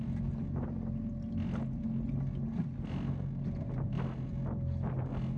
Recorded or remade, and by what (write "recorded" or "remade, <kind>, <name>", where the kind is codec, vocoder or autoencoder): recorded